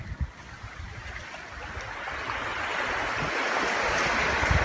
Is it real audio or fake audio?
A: real